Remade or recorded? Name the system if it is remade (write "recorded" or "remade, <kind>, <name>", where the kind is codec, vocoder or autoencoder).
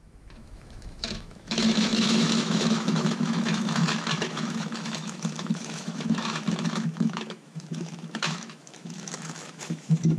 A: remade, autoencoder, DAC-VAE